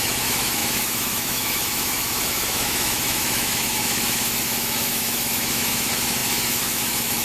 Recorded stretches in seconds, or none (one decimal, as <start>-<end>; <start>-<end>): none